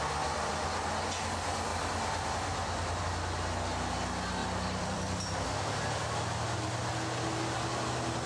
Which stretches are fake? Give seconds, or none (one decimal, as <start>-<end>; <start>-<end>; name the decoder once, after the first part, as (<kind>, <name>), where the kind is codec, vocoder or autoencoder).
4.4-5.5 (vocoder, BigVGAN v2)